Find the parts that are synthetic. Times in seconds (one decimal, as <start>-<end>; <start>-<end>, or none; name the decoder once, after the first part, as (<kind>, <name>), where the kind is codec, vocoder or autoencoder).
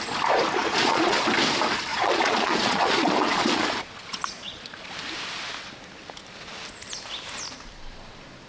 0.6-1.2 (vocoder, Vocos); 1.9-4.9